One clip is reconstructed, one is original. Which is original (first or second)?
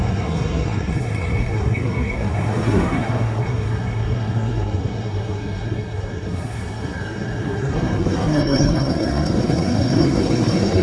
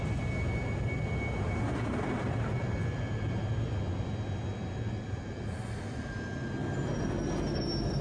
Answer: second